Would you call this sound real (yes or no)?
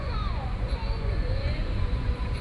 no